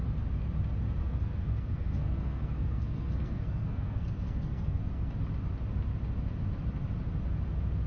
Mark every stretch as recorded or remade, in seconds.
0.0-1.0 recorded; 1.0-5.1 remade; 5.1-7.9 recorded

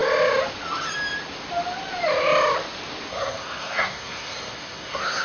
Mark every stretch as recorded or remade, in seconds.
0.0-3.1 recorded; 3.1-5.2 remade